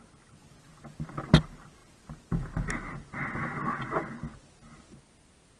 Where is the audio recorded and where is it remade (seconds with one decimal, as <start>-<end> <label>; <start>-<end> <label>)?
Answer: 0.0-5.6 recorded